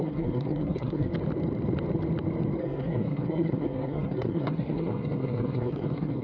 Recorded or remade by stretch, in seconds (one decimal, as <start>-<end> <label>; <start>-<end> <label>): 0.0-1.1 remade; 1.1-2.6 recorded; 2.6-6.2 remade